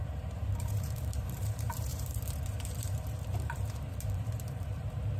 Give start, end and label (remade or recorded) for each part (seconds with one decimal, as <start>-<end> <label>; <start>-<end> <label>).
0.0-5.2 remade